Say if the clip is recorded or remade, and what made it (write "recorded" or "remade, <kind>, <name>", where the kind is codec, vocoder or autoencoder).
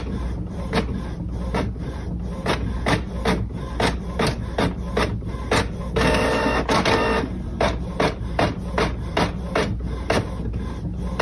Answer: recorded